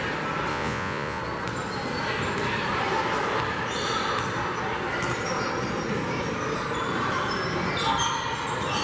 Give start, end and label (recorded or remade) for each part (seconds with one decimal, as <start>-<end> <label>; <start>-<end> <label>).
0.0-0.5 recorded; 0.5-1.2 remade; 1.2-8.8 recorded